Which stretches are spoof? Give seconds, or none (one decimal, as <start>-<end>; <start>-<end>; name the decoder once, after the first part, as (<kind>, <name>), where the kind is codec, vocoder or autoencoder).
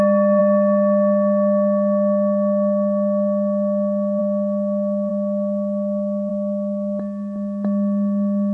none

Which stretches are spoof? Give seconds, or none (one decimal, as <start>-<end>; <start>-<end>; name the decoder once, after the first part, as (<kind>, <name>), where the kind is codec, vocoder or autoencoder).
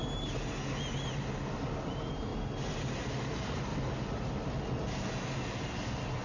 1.9-3.7 (vocoder, BigVGAN v2)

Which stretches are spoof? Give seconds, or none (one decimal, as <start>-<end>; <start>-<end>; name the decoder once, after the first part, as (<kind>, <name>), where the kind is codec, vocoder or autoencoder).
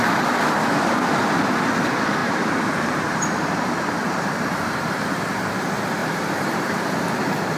2.2-4.1 (vocoder, BigVGAN v2); 6.0-7.6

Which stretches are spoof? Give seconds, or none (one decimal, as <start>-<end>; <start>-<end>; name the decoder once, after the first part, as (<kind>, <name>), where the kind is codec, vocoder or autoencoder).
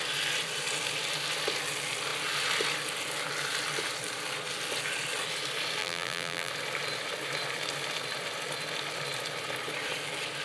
5.8-6.5 (vocoder, BigVGAN v2)